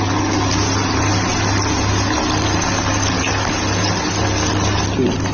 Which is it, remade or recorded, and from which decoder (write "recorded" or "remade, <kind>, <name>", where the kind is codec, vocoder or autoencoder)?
recorded